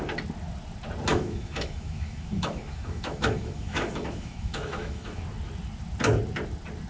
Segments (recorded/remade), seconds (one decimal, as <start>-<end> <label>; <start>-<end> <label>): 0.0-1.1 recorded; 1.1-5.2 remade; 5.2-6.9 recorded